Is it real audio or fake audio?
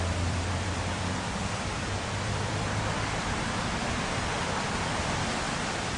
fake